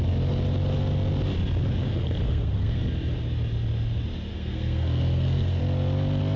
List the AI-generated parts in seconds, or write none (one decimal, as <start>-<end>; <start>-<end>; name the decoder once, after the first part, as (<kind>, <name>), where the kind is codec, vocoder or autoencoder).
1.9-2.8 (codec, SNAC); 4.3-5.6